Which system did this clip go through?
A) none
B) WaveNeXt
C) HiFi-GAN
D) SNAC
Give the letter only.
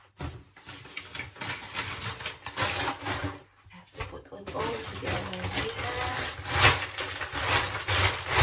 A